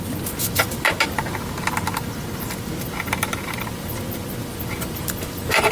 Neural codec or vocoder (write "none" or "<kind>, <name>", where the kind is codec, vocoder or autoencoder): none